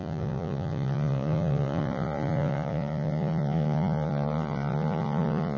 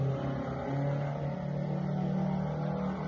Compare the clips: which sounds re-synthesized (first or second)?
first